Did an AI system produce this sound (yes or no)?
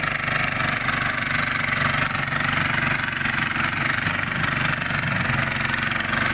no